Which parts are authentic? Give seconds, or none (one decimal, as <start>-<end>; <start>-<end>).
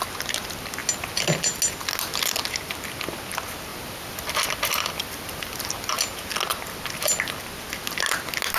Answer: 0.0-3.7; 6.0-8.6